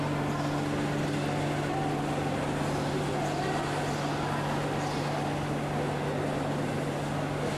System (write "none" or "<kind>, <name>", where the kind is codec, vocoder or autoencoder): none